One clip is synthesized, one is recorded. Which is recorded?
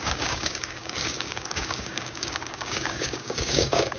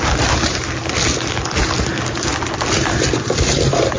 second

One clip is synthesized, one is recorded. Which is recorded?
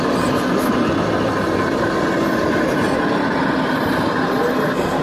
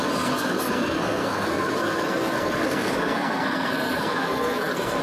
first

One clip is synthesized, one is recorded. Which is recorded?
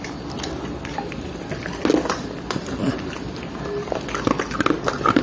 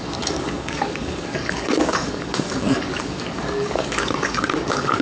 first